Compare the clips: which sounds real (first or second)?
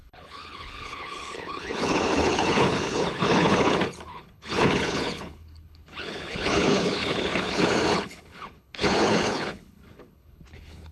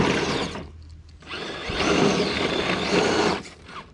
second